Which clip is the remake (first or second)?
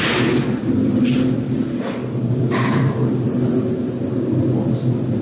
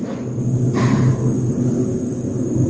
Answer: first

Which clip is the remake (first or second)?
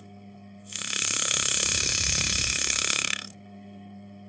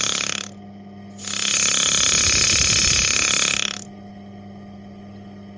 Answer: first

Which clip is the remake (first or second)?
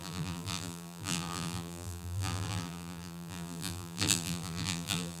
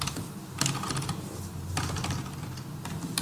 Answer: first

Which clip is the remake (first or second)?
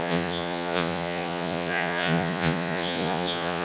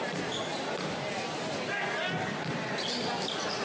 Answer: first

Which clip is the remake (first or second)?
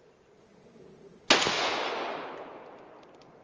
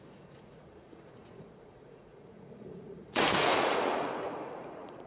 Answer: second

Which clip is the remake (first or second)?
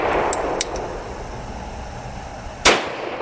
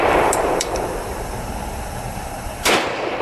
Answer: second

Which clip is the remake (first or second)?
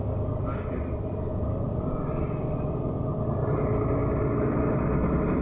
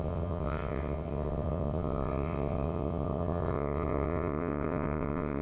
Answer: second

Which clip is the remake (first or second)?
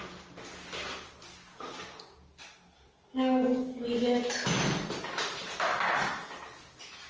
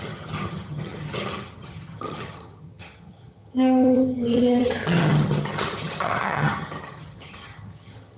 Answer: second